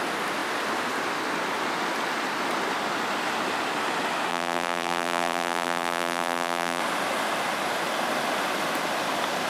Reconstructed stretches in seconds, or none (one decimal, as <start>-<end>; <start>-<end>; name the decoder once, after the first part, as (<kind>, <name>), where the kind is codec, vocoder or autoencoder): 4.3-6.8 (vocoder, BigVGAN v2)

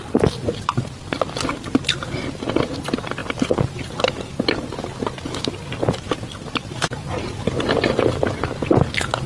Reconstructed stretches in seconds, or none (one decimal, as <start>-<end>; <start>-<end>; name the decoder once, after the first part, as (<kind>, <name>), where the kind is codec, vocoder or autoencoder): none